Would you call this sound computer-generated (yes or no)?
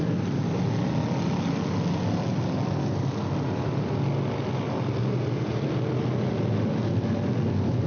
no